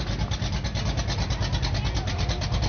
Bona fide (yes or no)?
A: yes